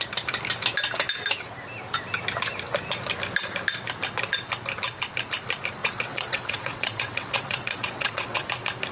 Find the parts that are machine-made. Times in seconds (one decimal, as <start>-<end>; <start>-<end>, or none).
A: 5.8-8.5